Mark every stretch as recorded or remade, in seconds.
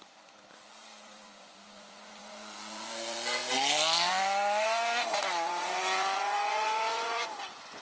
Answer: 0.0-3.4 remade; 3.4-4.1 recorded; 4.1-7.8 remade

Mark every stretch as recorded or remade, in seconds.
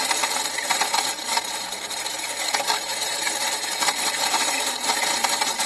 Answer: 0.0-5.7 remade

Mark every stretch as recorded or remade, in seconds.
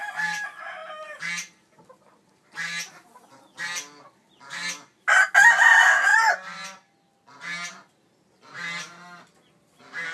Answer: 0.0-10.1 recorded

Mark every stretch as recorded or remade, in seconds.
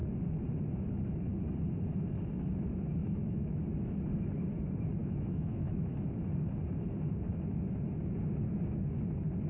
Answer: 0.0-3.0 recorded; 3.0-3.6 remade; 3.6-5.0 recorded; 5.0-5.9 remade; 5.9-9.5 recorded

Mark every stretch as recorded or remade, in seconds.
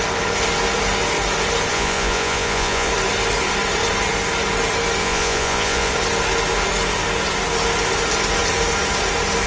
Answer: 0.0-1.7 recorded; 1.7-2.9 remade; 2.9-5.0 recorded; 5.0-5.9 remade; 5.9-9.5 recorded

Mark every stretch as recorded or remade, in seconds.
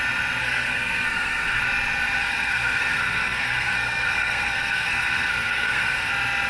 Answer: 0.0-0.4 recorded; 0.4-1.6 remade; 1.6-2.2 recorded; 2.2-6.1 remade; 6.1-6.5 recorded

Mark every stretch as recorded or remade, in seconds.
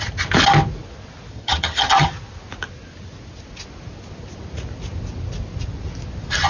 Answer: 0.0-1.3 recorded; 1.3-2.1 remade; 2.1-6.5 recorded